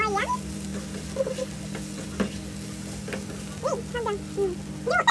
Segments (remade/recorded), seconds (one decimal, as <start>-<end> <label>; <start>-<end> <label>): 0.0-5.1 recorded